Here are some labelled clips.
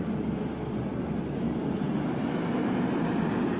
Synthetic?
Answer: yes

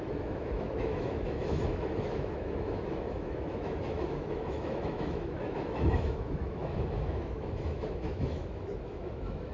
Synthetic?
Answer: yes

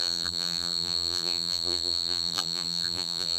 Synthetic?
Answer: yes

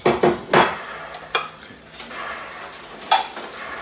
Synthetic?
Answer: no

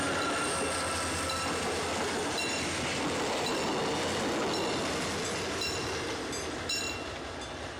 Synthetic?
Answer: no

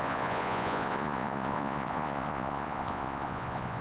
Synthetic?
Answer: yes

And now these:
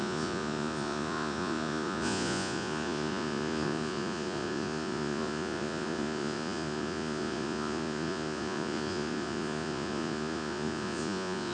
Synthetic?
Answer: yes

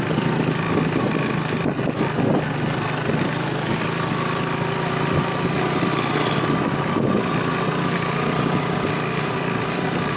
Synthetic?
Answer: no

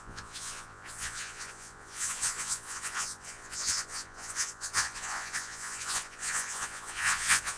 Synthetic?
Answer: yes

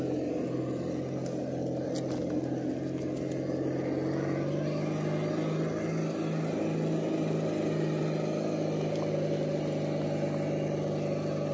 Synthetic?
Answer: no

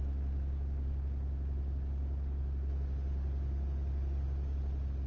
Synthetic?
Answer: no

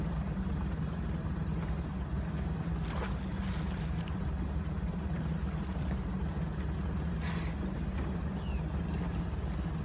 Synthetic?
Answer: no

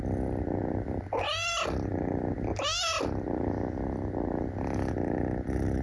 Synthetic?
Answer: no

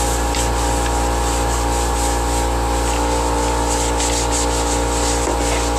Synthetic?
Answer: no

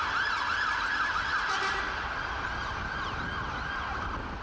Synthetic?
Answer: no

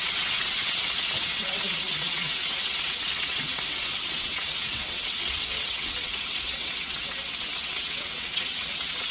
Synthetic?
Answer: yes